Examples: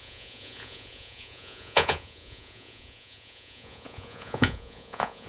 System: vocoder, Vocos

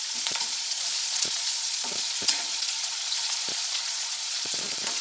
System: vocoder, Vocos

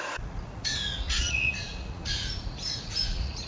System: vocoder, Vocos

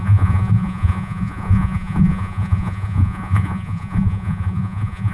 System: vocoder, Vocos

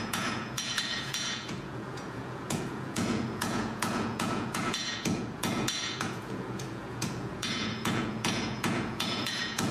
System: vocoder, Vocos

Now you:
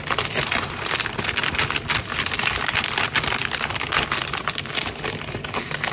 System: none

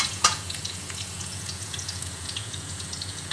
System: vocoder, Vocos